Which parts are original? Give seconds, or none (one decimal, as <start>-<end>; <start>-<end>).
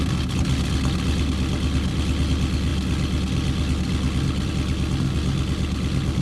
0.0-6.2